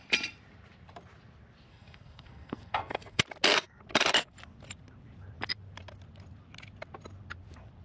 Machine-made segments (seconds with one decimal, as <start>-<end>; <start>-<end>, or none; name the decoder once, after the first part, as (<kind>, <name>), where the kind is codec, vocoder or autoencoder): 1.7-3.2 (codec, SNAC)